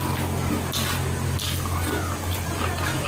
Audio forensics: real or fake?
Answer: real